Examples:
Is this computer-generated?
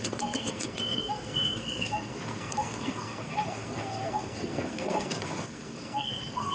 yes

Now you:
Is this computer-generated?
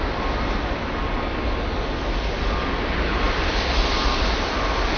no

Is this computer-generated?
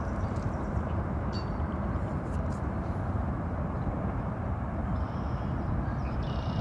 yes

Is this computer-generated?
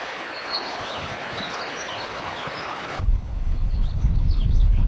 yes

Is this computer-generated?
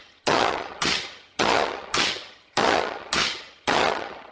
yes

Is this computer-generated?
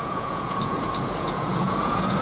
yes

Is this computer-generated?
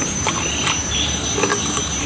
no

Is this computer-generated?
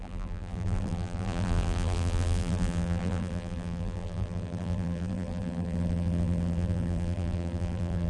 yes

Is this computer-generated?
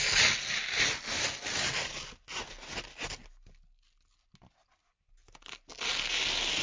no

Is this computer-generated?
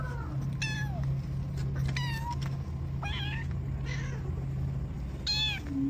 no